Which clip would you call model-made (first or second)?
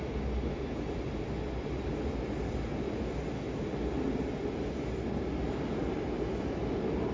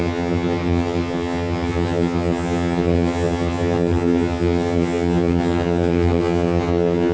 second